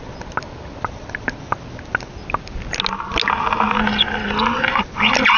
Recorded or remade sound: recorded